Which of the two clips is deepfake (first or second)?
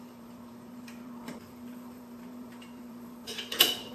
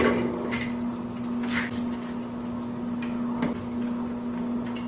first